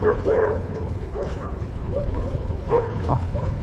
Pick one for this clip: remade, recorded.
remade